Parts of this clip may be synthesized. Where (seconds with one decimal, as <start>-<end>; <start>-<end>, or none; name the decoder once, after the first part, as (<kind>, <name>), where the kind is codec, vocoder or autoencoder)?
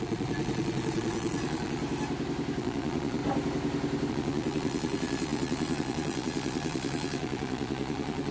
0.0-1.8 (vocoder, Vocos); 2.6-3.2; 4.1-8.3